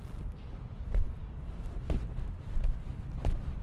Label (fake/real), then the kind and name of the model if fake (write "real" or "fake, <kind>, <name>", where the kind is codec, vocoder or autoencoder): fake, vocoder, BigVGAN v2